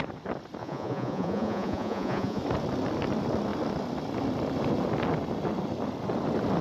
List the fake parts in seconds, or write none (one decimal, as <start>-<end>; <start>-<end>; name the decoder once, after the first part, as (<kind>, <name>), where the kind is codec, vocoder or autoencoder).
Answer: 0.6-2.4 (vocoder, Vocos)